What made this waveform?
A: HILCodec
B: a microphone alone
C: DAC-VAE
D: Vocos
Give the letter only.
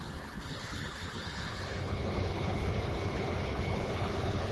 A